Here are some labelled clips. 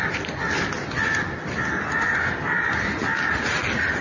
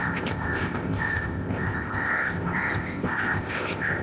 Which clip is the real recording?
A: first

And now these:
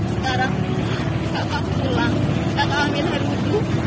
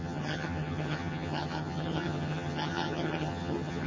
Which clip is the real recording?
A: first